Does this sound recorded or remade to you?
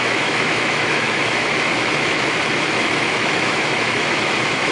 remade